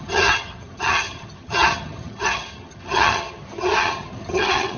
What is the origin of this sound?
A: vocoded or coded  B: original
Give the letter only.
A